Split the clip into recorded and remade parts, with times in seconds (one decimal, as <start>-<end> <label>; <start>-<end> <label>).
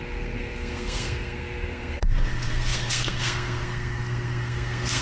0.0-5.0 remade